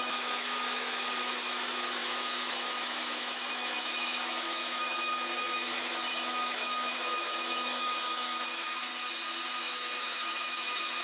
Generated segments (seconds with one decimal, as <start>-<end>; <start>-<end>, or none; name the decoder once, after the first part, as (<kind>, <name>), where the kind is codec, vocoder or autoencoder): 0.0-8.9 (autoencoder, DAC-VAE); 9.6-11.0